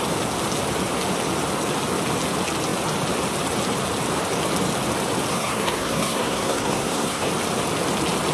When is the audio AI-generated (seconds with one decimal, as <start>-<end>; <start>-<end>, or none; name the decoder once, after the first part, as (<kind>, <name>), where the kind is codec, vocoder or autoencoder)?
5.3-7.3 (codec, SNAC)